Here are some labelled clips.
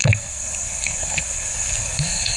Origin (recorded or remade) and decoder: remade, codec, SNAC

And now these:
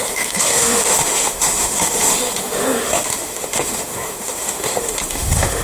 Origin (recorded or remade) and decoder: remade, autoencoder, DAC-VAE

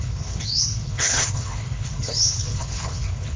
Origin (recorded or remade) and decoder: remade, codec, HILCodec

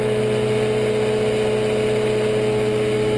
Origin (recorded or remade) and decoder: recorded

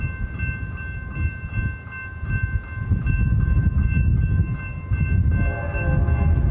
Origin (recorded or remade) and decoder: recorded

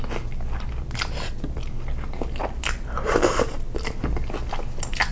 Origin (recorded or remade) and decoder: recorded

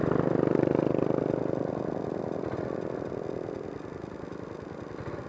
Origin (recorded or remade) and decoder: recorded